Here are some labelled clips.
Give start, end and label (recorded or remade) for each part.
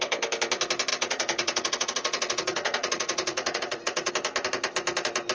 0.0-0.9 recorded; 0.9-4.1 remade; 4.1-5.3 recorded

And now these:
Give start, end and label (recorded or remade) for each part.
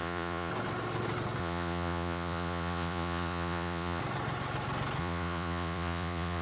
0.0-0.5 remade; 0.5-1.4 recorded; 1.4-4.0 remade; 4.0-5.0 recorded; 5.0-6.4 remade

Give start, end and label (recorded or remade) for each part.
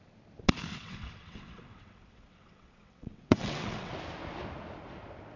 0.0-0.7 recorded; 0.7-3.9 remade; 3.9-5.4 recorded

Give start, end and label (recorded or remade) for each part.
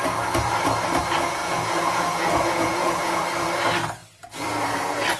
0.0-1.4 recorded; 1.4-3.2 remade; 3.2-5.2 recorded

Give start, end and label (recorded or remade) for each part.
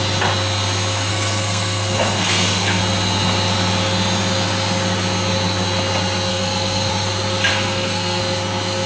0.0-1.1 recorded; 1.1-2.8 remade; 2.8-6.3 recorded; 6.3-6.9 remade; 6.9-7.5 recorded; 7.5-8.2 remade; 8.2-8.9 recorded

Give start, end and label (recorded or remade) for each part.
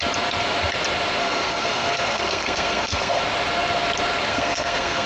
0.0-1.2 recorded; 1.2-3.2 remade; 3.2-4.3 recorded; 4.3-5.1 remade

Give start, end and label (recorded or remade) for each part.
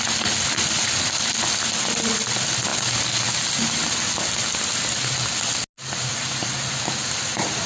0.0-7.7 recorded